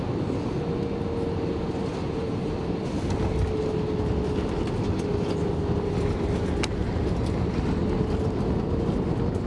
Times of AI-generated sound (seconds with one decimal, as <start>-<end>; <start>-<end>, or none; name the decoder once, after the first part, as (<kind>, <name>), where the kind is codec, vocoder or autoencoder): 2.0-2.9 (vocoder, BigVGAN v2); 6.8-7.6

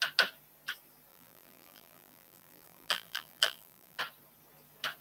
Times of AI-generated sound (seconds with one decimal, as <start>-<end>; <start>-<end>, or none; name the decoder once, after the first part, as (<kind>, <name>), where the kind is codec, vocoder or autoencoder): 1.1-4.0 (vocoder, BigVGAN v2)

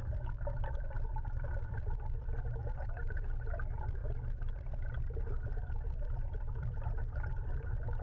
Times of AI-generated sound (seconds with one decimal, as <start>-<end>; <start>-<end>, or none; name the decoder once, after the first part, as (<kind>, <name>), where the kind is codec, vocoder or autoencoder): 0.0-3.1 (vocoder, BigVGAN v2); 4.0-8.0

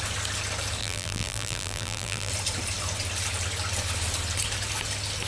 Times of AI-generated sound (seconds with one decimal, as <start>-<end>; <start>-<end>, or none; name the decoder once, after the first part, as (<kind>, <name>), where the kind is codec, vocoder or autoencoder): 0.8-2.3 (vocoder, BigVGAN v2)

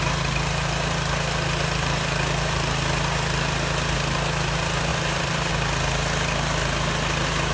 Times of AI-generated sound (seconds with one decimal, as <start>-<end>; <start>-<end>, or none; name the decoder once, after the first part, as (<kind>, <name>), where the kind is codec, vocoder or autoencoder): 4.9-5.5 (vocoder, BigVGAN v2)

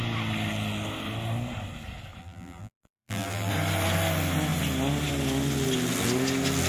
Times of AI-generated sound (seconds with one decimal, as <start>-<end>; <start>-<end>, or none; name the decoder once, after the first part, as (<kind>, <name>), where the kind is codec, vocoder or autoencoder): 2.2-3.5 (vocoder, BigVGAN v2)

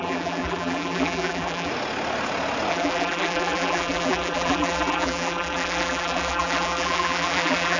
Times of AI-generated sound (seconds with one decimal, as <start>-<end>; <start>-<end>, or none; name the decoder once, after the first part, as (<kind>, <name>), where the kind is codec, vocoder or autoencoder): 0.0-1.7 (vocoder, BigVGAN v2); 2.7-7.8